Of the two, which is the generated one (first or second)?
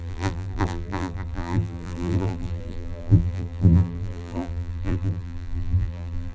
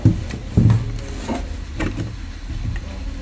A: first